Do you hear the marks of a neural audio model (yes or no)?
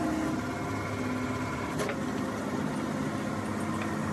no